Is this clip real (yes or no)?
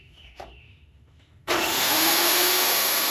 no